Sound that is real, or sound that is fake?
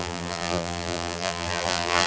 fake